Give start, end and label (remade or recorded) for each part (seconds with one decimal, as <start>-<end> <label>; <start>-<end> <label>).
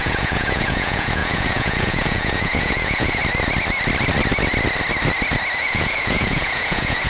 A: 0.0-3.2 remade; 3.2-5.6 recorded; 5.6-7.1 remade